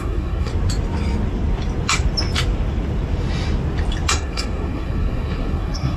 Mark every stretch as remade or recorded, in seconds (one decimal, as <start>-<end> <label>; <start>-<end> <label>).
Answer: 0.0-0.5 remade; 0.5-4.1 recorded; 4.1-6.0 remade